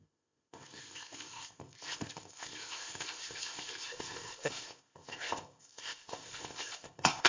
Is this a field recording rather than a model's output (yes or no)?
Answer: no